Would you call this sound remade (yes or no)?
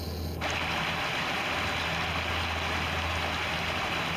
no